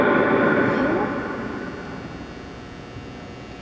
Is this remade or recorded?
recorded